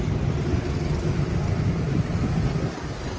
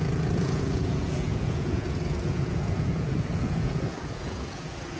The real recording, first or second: first